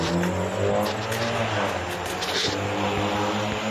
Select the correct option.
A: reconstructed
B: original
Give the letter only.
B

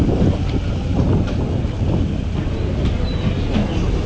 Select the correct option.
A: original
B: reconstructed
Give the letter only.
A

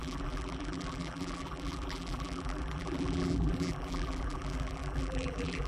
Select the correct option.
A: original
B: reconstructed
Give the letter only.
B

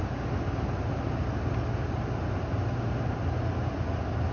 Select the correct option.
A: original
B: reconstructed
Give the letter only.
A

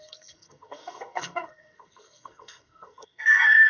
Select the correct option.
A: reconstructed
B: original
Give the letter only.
A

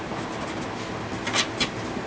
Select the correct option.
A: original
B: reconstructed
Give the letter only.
A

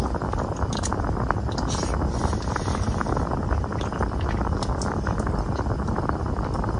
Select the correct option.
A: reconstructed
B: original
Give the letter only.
B